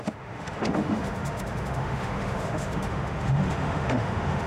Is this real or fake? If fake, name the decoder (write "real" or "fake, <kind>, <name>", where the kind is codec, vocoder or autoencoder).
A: fake, autoencoder, DAC-VAE